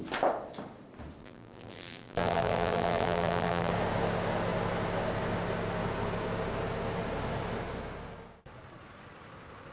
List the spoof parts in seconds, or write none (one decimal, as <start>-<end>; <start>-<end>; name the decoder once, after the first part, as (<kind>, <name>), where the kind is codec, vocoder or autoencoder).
1.2-3.7 (vocoder, BigVGAN v2)